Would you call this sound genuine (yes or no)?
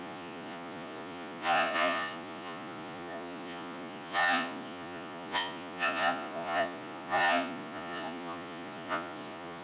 no